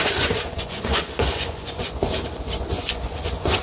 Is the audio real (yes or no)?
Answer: no